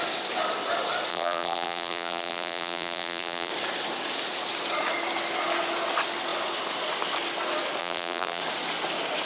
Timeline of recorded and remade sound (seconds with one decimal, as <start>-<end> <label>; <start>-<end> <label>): 0.0-1.1 recorded; 1.1-3.5 remade; 3.5-7.8 recorded; 7.8-8.4 remade; 8.4-9.3 recorded